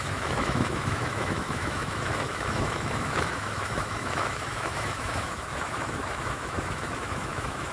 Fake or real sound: fake